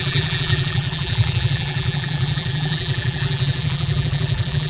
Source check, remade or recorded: remade